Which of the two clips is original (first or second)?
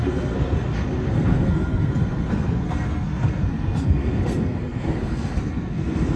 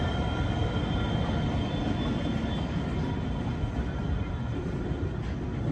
second